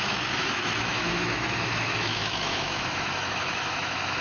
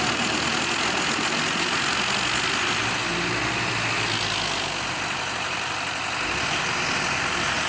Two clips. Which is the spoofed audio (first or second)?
first